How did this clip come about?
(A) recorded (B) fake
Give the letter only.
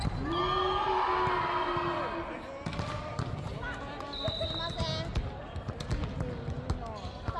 A